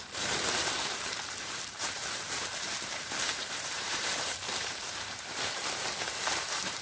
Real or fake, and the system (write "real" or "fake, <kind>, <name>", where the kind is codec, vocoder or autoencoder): fake, vocoder, BigVGAN v2